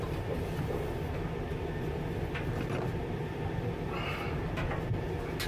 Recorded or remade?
recorded